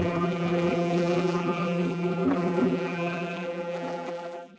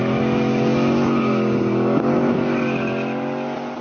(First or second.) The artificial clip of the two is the first